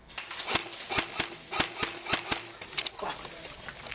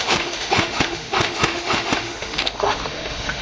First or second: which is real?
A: first